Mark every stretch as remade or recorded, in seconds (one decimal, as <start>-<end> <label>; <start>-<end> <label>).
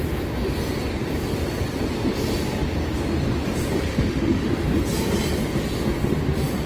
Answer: 0.0-3.9 recorded; 3.9-4.5 remade; 4.5-6.7 recorded